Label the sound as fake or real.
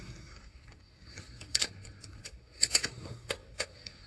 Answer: fake